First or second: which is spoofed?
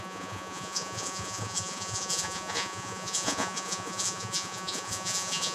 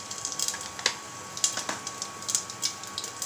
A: first